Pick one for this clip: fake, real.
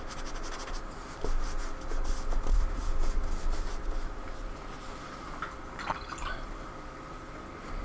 real